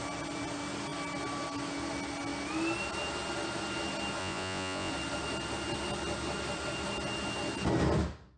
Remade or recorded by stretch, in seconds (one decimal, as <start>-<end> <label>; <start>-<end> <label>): 0.0-4.2 recorded; 4.2-4.9 remade; 4.9-8.4 recorded